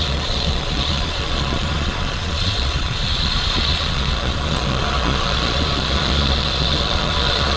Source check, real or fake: fake